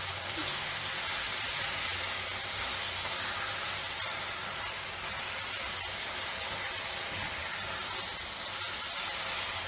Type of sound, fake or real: real